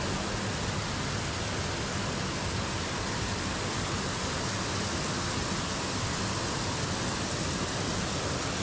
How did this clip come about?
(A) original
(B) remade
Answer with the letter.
A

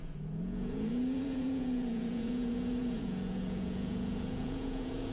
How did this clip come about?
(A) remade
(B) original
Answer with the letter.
A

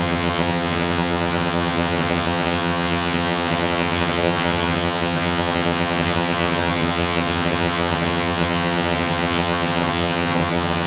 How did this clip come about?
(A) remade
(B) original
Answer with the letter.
A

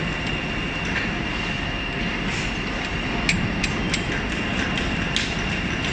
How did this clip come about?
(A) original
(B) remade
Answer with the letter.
A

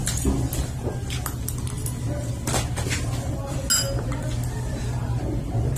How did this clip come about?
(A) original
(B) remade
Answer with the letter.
A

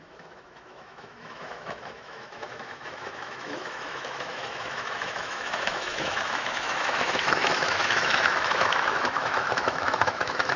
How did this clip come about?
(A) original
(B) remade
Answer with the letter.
B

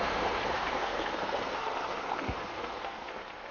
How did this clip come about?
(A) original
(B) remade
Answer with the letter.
B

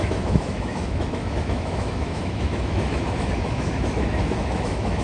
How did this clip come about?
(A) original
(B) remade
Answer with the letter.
B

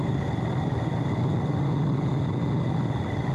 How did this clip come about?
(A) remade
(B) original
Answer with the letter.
A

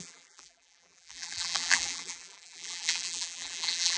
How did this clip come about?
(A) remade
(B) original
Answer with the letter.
A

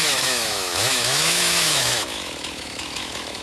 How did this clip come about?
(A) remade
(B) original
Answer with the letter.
A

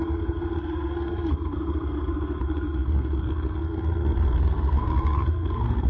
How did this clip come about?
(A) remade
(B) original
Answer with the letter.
A